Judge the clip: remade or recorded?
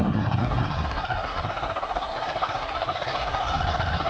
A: remade